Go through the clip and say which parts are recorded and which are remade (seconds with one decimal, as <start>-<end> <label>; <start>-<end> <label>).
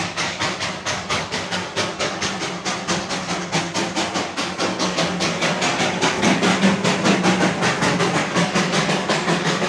0.0-2.4 remade; 2.4-4.2 recorded; 4.2-6.5 remade; 6.5-8.0 recorded; 8.0-9.7 remade